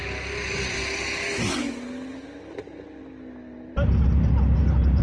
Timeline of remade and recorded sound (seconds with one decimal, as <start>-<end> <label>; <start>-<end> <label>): 0.0-5.0 recorded